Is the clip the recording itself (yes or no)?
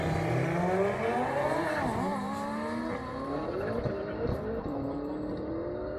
yes